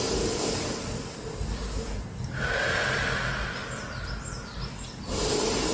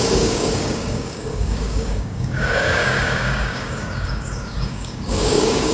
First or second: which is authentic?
first